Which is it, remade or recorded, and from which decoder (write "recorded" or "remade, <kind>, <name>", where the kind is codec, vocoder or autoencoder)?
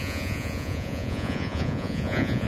remade, vocoder, Vocos